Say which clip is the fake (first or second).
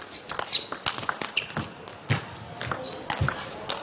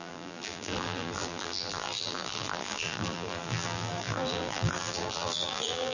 second